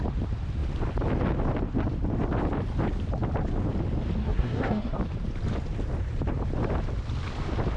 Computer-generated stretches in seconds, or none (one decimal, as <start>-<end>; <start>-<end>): 4.2-5.0